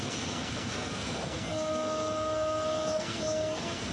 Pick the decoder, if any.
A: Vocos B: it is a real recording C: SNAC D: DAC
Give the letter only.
C